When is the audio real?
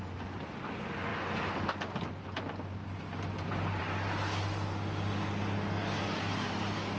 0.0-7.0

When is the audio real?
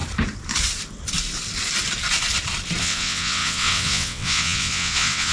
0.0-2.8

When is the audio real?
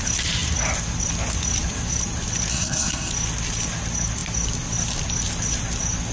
0.0-2.5; 3.1-6.1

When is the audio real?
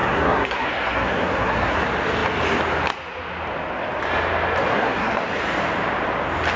1.8-4.7; 5.2-6.6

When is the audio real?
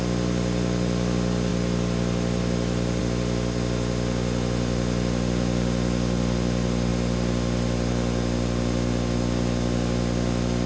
0.0-1.5; 3.0-10.7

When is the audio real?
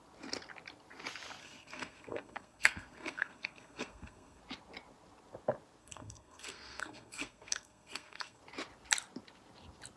0.0-1.4; 4.4-5.8; 8.4-10.0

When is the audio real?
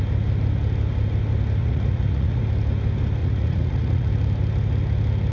0.0-1.6; 2.4-3.2; 4.1-5.3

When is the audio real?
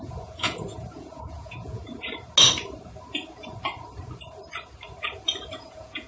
1.8-5.5